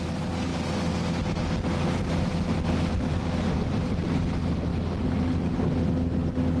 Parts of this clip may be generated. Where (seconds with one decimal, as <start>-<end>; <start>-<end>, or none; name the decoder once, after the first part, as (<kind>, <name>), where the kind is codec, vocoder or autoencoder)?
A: none